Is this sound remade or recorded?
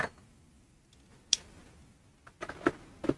recorded